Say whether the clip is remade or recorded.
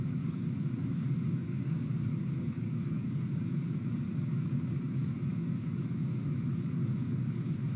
remade